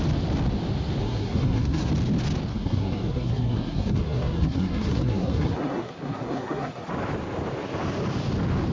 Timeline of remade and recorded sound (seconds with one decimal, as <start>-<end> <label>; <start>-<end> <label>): 0.0-1.0 recorded; 1.0-1.9 remade; 1.9-2.5 recorded; 2.5-6.9 remade; 6.9-8.7 recorded